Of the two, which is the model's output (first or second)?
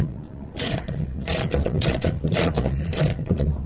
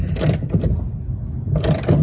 first